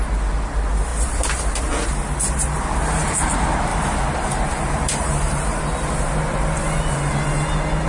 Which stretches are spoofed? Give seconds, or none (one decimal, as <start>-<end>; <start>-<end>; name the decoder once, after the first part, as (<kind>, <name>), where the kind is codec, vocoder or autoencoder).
3.7-5.6 (vocoder, BigVGAN v2)